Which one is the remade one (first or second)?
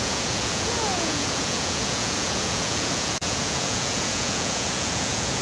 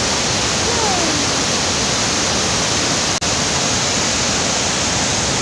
first